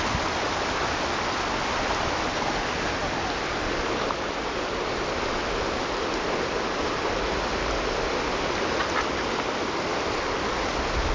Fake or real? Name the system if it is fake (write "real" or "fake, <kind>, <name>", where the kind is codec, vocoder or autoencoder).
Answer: real